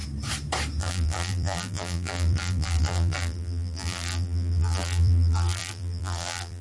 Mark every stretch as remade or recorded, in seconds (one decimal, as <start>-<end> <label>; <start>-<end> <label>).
0.0-0.8 recorded; 0.8-6.6 remade